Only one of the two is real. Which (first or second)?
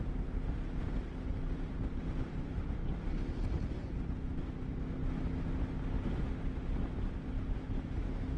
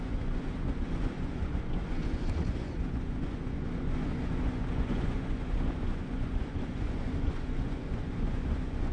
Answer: first